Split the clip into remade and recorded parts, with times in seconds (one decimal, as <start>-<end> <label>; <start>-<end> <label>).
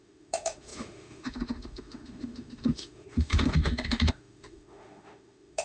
0.0-5.6 remade